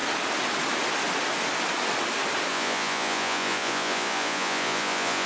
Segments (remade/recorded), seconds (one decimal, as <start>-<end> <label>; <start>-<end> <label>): 0.0-2.5 recorded; 2.5-5.3 remade